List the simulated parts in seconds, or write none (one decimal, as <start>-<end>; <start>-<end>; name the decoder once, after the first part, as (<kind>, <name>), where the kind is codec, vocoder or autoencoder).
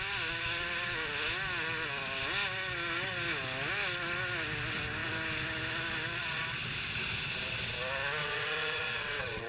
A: 8.2-9.5 (vocoder, WaveNeXt)